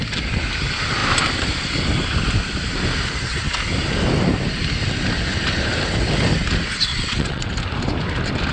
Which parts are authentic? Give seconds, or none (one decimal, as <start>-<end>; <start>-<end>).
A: 0.0-6.9; 7.5-8.5